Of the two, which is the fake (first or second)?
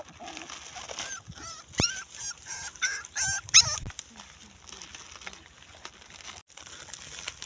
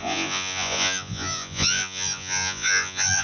second